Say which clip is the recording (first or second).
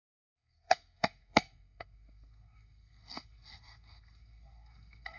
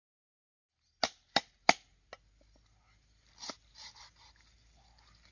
second